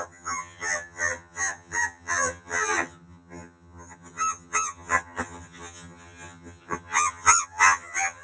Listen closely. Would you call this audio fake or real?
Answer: fake